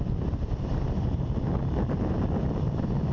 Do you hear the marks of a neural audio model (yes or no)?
no